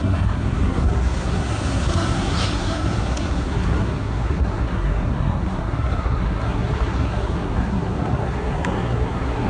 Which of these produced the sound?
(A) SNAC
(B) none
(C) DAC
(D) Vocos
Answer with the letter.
A